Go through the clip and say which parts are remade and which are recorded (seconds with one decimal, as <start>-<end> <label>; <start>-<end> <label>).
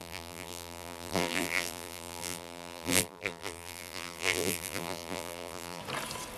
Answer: 0.0-5.8 remade; 5.8-6.4 recorded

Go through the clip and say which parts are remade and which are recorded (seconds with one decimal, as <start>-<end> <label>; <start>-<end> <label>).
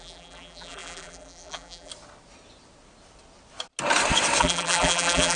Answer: 0.0-1.9 remade; 1.9-4.4 recorded; 4.4-5.4 remade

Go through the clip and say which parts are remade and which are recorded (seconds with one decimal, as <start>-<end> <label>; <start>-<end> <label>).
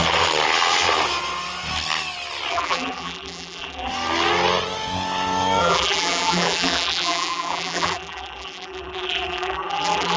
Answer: 0.0-2.5 recorded; 2.5-3.9 remade; 3.9-5.6 recorded; 5.6-10.2 remade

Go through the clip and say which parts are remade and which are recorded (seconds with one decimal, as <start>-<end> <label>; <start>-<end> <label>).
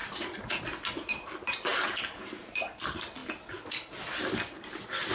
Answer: 0.0-0.6 remade; 0.6-5.1 recorded